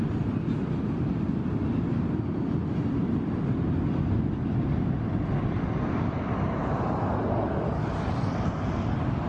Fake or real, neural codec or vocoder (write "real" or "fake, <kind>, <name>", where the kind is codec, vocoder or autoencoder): real